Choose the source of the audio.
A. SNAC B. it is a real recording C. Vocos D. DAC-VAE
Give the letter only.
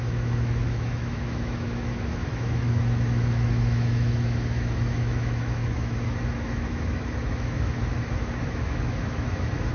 D